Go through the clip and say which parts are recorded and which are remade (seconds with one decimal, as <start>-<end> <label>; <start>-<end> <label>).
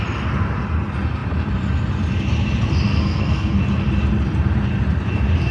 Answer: 0.0-2.9 recorded; 2.9-3.6 remade; 3.6-5.5 recorded